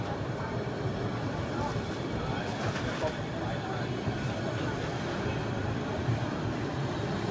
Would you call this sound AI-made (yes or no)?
yes